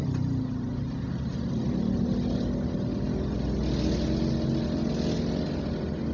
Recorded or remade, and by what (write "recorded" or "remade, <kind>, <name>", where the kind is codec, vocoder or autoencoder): recorded